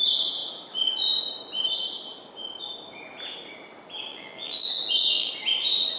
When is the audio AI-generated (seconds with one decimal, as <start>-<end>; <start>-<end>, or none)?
4.1-5.3